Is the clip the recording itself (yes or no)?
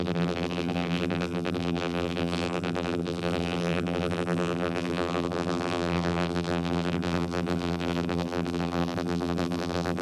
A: no